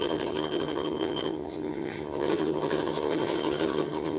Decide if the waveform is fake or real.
fake